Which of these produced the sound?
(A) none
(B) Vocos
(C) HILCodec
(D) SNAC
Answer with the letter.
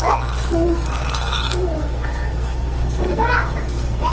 D